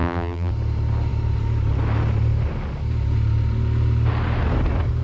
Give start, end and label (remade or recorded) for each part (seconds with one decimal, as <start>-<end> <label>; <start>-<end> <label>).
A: 0.0-0.5 remade; 0.5-5.0 recorded